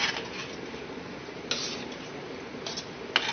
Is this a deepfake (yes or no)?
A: no